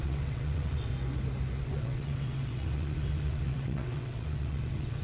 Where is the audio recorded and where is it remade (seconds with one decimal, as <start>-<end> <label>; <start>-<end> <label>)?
0.0-0.9 remade; 0.9-1.6 recorded; 1.6-5.0 remade

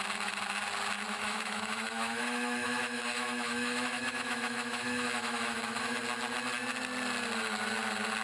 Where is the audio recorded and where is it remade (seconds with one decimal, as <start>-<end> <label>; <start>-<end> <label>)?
0.0-1.1 recorded; 1.1-6.0 remade; 6.0-8.2 recorded

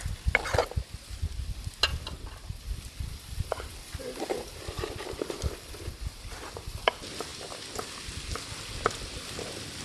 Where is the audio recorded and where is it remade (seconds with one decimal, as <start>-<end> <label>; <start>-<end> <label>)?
0.0-1.9 recorded; 1.9-6.0 remade; 6.0-7.3 recorded; 7.3-7.9 remade; 7.9-9.8 recorded

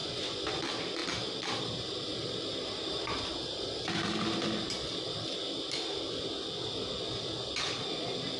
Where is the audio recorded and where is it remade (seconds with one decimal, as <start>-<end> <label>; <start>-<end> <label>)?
0.0-0.6 remade; 0.6-8.4 recorded

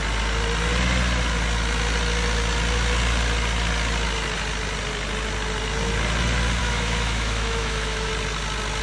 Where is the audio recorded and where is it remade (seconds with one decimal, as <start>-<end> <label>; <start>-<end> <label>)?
0.0-6.6 recorded; 6.6-8.1 remade; 8.1-8.8 recorded

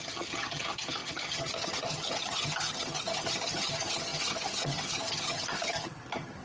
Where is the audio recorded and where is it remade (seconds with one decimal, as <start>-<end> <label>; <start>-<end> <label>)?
0.0-6.4 remade